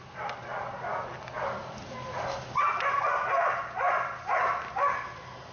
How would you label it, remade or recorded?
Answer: recorded